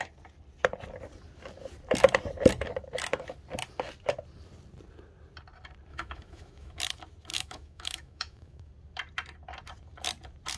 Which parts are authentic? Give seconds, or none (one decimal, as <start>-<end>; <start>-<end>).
0.0-5.9; 6.8-7.3; 8.7-10.6